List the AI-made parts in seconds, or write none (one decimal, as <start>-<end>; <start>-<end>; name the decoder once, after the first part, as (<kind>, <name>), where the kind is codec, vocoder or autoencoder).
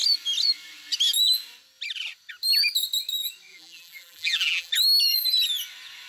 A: 3.5-4.7 (vocoder, BigVGAN v2)